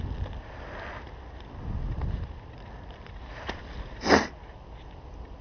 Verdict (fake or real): real